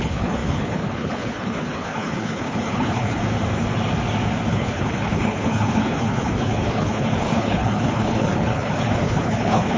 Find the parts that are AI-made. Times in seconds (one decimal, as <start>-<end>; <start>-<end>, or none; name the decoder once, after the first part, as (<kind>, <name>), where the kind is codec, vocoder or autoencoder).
0.0-3.2 (codec, HILCodec); 4.5-9.8